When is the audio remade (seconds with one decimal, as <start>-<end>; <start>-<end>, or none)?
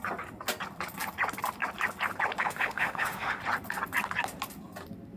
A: 2.4-3.4